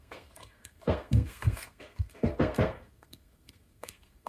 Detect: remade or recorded remade